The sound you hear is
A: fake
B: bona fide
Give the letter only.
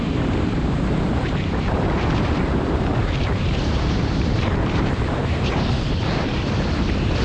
A